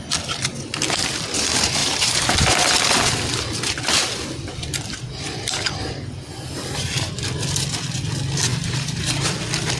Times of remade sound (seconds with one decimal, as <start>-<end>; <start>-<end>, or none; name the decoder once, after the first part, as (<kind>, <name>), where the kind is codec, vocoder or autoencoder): 1.8-2.3 (vocoder, BigVGAN v2); 8.5-9.3